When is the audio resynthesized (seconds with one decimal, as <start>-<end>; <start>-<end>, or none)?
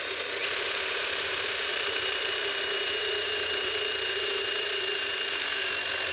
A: 0.4-2.6; 3.0-5.6